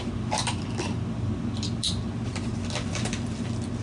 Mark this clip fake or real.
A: real